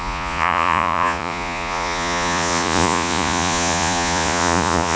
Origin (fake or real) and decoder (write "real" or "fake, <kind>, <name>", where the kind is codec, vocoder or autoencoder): fake, vocoder, Vocos